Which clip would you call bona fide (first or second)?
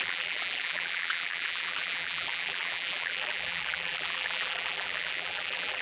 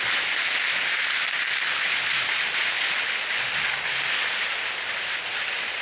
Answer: second